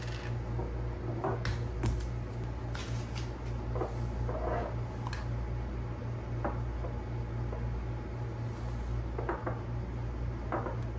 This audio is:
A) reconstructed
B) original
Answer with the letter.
B